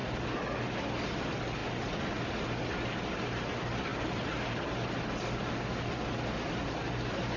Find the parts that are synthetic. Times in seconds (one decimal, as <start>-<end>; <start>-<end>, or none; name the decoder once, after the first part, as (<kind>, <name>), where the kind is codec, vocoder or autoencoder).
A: none